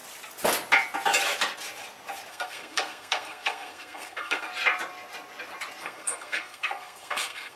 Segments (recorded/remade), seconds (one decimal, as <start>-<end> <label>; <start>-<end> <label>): 0.0-2.3 recorded; 2.3-4.5 remade; 4.5-5.8 recorded; 5.8-7.6 remade